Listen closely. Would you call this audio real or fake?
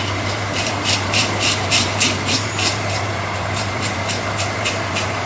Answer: fake